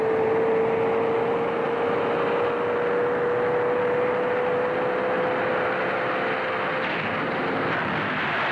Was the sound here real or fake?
real